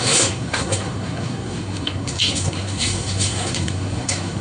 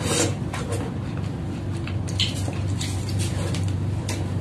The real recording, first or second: second